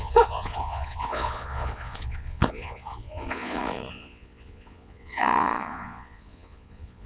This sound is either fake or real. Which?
fake